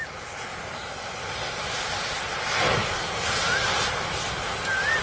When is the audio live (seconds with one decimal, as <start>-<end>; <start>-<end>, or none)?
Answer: 0.0-5.0